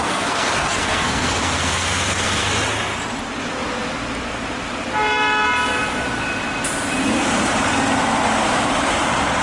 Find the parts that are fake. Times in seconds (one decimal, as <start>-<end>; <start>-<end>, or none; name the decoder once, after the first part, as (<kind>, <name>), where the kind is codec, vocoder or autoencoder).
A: 0.0-2.5 (codec, SNAC)